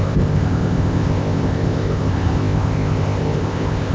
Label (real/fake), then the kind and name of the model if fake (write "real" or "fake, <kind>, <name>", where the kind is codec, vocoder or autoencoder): fake, codec, ZipCodec